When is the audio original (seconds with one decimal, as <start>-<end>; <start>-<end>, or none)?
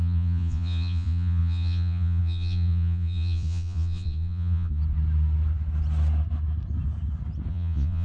4.8-7.5